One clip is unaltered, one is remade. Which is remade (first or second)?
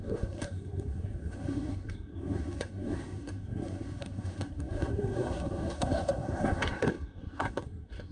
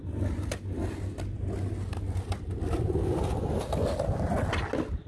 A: first